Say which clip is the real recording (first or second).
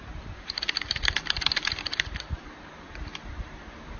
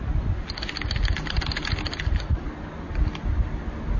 second